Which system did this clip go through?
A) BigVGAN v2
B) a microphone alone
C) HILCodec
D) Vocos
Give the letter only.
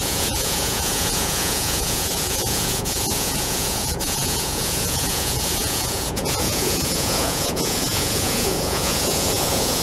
D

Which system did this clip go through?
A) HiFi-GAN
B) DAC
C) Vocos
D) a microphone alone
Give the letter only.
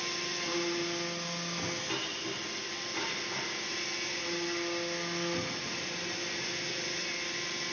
D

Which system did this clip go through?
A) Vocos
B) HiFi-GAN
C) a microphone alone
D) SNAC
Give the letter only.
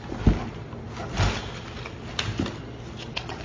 C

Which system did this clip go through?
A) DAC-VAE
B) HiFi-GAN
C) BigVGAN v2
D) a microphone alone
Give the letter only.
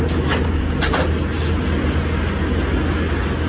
D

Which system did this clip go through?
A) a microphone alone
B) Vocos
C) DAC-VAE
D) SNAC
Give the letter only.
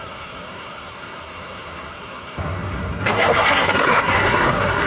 D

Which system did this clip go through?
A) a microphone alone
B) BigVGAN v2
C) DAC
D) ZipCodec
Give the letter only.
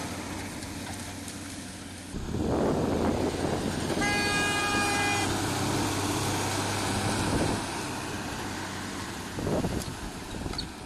A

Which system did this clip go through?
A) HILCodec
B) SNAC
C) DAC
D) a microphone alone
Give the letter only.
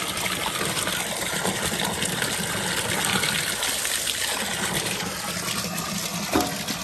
D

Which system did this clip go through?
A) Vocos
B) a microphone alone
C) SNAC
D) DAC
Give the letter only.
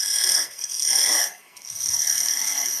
C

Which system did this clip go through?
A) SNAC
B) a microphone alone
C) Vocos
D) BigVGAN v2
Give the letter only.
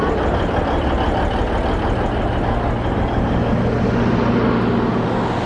B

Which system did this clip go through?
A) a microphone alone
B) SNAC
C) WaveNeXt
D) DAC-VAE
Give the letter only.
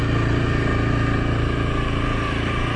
A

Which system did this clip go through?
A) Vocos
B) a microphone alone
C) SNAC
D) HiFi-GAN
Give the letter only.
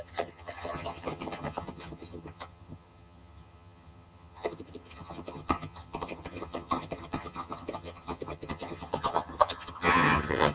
D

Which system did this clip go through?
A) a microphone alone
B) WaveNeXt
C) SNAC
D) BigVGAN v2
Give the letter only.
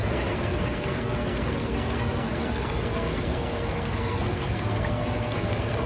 C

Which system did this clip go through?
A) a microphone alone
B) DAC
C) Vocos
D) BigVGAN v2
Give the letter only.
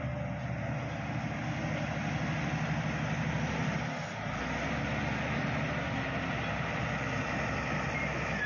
A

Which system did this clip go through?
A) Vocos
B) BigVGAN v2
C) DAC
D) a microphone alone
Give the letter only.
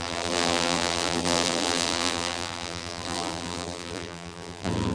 B